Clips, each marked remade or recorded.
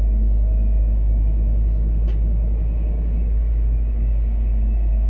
recorded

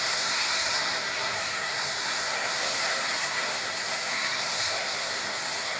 remade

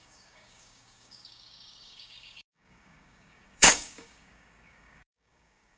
remade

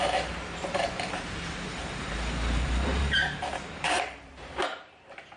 remade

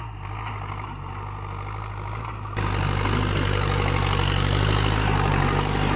recorded